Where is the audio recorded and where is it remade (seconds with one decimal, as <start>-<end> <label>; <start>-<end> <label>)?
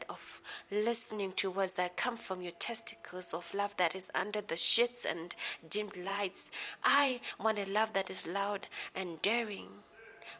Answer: 0.0-1.1 recorded; 1.1-1.7 remade; 1.7-6.1 recorded; 6.1-7.3 remade; 7.3-10.4 recorded